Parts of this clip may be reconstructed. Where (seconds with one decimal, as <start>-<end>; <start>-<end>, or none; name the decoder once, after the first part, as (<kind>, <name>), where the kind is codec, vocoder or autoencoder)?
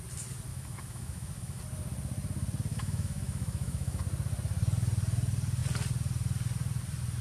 0.5-1.6 (autoencoder, DAC-VAE); 2.7-4.0